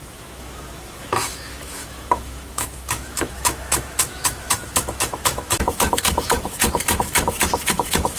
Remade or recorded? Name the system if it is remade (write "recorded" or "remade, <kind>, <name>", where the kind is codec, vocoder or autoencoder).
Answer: remade, autoencoder, DAC-VAE